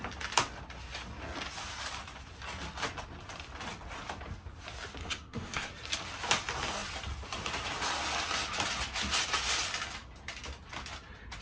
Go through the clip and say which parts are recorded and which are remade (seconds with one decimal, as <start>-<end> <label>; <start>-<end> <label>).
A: 0.0-5.0 recorded; 5.0-5.7 remade; 5.7-11.4 recorded